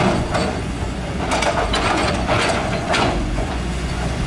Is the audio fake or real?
fake